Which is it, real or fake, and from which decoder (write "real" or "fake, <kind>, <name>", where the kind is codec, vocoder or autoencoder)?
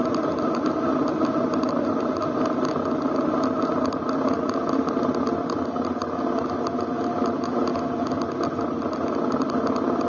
real